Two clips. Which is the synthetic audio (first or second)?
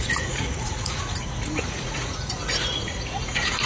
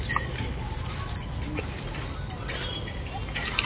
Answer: first